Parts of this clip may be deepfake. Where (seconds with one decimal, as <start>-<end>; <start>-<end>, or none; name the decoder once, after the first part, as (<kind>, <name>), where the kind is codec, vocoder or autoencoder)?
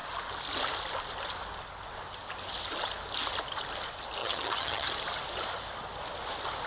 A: 4.2-4.9 (vocoder, HiFi-GAN)